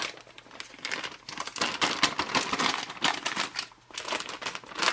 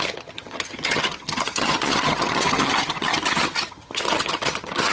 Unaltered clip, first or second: first